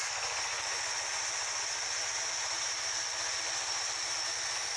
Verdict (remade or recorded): recorded